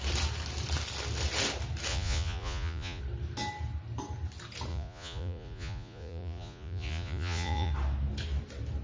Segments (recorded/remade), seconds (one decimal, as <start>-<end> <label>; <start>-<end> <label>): 0.0-1.9 recorded; 1.9-3.0 remade; 3.0-4.7 recorded; 4.7-7.7 remade; 7.7-8.8 recorded